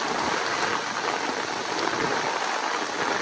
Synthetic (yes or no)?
no